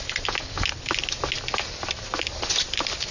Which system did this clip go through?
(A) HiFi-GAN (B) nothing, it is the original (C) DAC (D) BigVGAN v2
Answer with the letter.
B